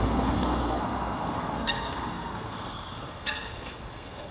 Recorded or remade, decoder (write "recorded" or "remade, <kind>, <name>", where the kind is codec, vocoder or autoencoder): remade, codec, SNAC